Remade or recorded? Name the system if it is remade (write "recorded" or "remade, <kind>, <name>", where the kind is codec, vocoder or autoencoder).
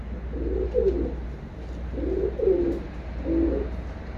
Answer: recorded